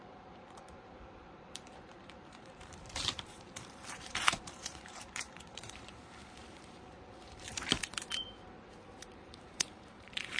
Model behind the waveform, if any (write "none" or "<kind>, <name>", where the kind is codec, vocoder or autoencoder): vocoder, BigVGAN v2